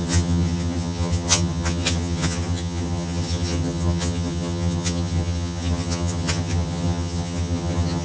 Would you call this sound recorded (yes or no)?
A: no